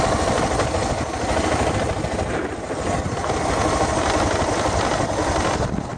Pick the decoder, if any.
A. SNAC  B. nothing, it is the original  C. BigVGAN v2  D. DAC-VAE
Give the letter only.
B